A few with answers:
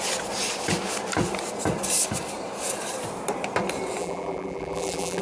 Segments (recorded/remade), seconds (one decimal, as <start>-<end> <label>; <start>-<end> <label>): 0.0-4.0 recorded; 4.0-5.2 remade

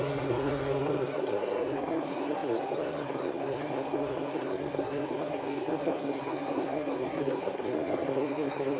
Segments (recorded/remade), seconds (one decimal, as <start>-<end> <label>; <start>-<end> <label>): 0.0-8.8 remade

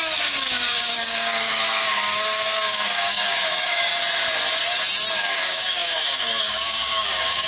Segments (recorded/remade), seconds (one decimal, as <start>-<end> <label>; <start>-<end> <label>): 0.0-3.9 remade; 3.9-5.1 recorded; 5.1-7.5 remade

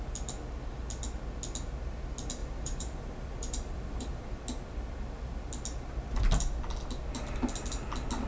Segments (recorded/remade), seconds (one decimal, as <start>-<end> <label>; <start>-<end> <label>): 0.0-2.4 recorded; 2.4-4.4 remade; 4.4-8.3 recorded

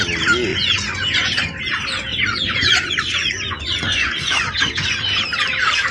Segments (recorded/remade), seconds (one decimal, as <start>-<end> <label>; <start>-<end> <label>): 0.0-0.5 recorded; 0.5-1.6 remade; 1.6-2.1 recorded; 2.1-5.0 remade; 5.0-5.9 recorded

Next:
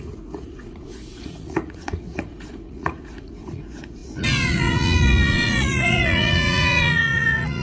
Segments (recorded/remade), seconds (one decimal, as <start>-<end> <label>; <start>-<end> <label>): 0.0-7.6 remade

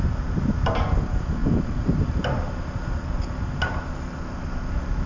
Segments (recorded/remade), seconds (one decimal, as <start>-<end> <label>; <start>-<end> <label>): 0.0-5.1 recorded